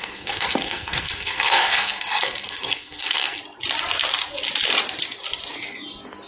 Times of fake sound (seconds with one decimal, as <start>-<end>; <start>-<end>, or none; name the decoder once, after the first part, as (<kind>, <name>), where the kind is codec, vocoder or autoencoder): 0.0-3.4 (codec, SNAC)

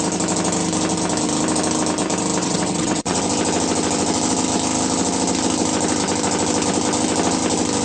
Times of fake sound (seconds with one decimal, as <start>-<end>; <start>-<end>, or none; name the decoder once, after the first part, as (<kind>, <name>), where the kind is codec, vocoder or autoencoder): 2.4-3.2 (vocoder, WaveNeXt)

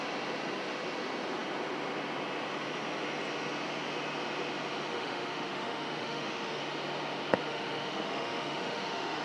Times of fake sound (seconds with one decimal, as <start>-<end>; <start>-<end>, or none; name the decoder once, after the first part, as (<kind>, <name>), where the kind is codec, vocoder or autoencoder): 4.9-6.6 (autoencoder, DAC-VAE); 7.5-9.2